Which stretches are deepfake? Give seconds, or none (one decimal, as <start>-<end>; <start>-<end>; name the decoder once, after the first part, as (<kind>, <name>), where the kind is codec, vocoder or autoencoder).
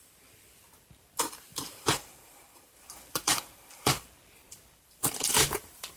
0.0-6.0 (vocoder, BigVGAN v2)